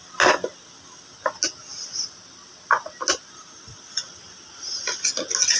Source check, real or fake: real